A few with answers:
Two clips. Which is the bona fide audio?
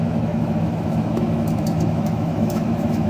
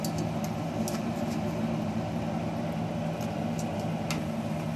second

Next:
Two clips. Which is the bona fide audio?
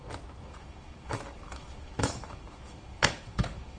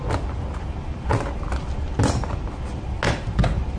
second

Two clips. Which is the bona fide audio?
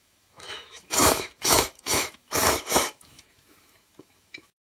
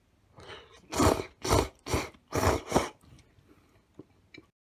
second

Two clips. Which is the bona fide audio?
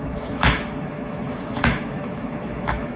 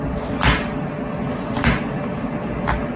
second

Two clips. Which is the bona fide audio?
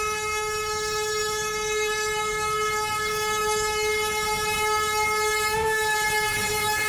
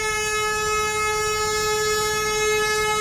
second